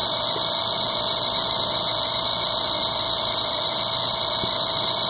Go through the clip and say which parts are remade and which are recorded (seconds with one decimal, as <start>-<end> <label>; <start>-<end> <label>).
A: 0.0-5.1 recorded